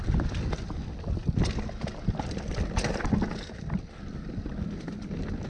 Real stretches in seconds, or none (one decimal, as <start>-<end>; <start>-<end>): 0.0-5.5